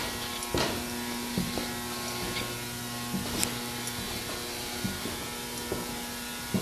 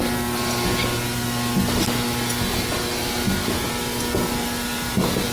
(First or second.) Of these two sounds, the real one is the first